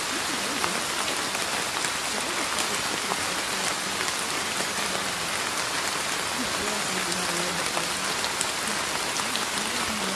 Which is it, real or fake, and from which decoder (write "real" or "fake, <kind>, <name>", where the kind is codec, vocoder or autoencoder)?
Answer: real